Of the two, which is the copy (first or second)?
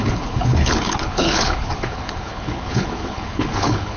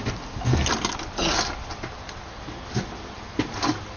first